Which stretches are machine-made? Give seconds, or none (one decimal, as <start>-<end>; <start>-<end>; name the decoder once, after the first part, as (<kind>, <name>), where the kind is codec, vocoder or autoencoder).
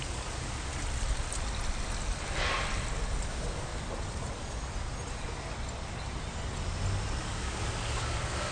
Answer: 0.0-0.7 (codec, DAC); 3.3-3.7; 7.2-8.5